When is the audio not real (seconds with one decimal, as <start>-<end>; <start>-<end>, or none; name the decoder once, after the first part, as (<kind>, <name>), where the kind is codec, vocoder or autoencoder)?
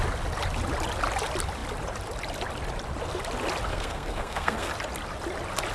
3.7-4.7 (codec, SNAC)